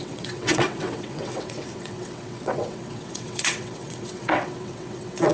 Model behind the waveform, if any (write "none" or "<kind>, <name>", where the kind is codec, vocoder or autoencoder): vocoder, WaveNeXt